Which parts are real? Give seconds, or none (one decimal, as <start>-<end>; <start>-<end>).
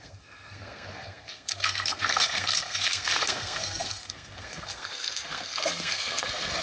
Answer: none